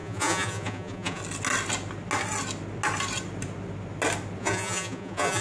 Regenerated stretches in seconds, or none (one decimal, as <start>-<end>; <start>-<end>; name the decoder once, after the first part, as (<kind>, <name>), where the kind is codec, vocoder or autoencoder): 0.0-1.2 (vocoder, Vocos); 4.4-5.4